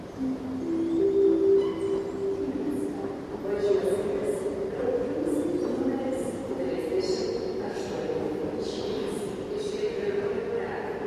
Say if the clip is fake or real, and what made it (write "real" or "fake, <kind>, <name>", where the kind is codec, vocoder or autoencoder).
real